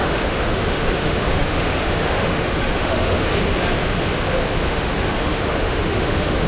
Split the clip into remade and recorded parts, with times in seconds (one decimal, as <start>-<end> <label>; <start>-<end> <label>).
0.0-3.3 remade; 3.3-4.7 recorded; 4.7-6.5 remade